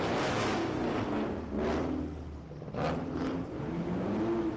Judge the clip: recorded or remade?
recorded